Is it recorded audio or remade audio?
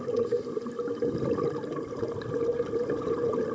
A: recorded